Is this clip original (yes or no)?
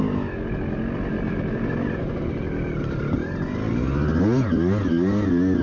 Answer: yes